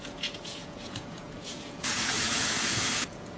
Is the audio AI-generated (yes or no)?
yes